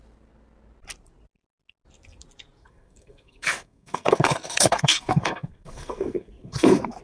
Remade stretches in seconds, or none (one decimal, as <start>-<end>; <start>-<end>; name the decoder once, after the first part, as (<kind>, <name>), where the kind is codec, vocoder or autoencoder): 2.6-7.0 (codec, SNAC)